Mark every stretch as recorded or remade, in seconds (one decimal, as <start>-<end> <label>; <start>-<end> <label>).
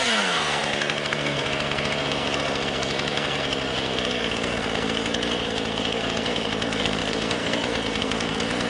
0.0-8.7 remade